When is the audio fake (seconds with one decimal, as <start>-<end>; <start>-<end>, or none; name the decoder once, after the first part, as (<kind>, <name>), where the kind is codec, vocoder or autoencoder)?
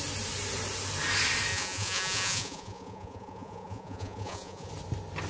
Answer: 1.5-4.7 (vocoder, Vocos)